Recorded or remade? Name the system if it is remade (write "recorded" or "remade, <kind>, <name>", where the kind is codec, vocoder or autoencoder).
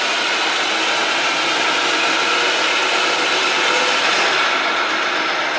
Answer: recorded